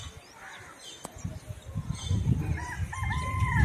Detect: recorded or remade recorded